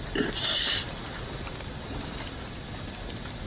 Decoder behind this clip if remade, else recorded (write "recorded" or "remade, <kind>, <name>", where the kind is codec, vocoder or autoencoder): recorded